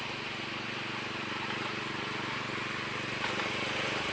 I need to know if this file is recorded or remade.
recorded